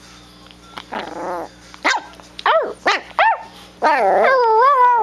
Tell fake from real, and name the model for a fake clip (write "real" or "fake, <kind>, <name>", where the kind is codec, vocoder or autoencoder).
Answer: real